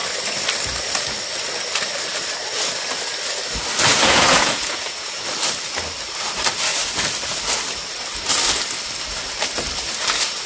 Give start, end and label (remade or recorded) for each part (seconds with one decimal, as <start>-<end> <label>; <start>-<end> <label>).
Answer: 0.0-3.9 recorded; 3.9-5.2 remade; 5.2-10.5 recorded